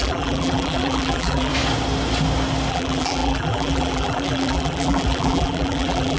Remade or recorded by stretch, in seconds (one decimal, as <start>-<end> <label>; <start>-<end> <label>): 0.0-1.5 remade; 1.5-2.7 recorded; 2.7-6.2 remade